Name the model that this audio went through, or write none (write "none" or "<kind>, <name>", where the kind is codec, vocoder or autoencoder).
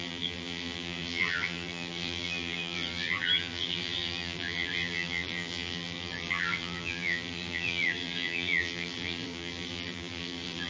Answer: vocoder, BigVGAN v2